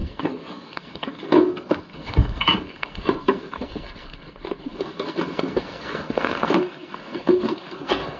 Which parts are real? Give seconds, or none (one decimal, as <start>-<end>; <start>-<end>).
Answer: none